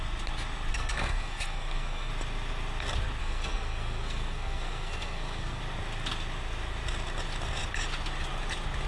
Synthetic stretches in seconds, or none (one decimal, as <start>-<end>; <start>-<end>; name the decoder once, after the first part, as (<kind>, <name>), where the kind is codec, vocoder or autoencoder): 0.7-2.1 (codec, SNAC); 3.2-5.6